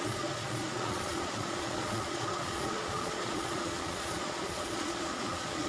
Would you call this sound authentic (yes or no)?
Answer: no